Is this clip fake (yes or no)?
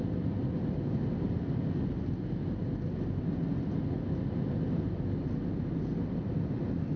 no